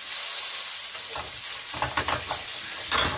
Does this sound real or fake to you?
real